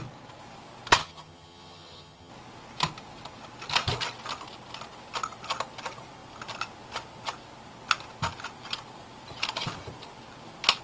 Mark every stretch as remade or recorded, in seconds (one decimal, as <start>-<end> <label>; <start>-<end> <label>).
0.0-1.0 recorded; 1.0-2.3 remade; 2.3-10.8 recorded